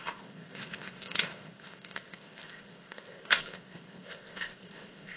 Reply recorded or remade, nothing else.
remade